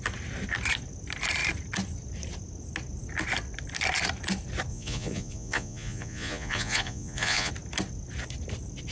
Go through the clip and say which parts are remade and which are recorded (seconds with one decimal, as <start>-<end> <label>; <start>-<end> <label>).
0.0-4.7 recorded; 4.7-7.5 remade; 7.5-8.9 recorded